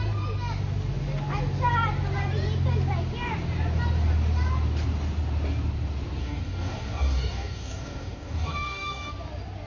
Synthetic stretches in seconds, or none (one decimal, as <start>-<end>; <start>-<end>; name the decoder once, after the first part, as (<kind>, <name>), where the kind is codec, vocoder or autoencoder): 6.2-9.1 (codec, DAC)